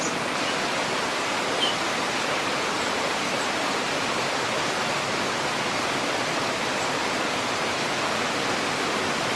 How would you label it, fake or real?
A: real